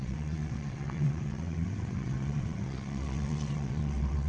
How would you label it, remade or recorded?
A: remade